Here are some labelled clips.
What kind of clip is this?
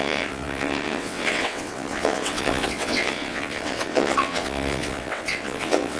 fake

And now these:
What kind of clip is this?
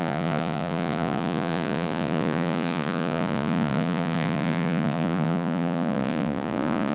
fake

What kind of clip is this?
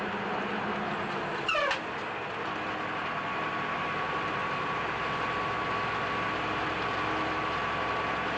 real